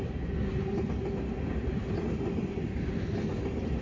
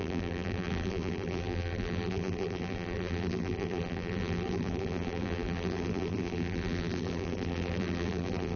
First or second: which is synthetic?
second